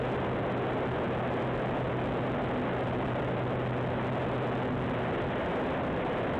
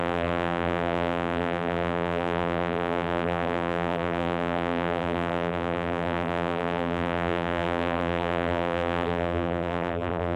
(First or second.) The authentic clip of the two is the first